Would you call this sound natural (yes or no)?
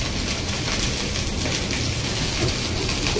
yes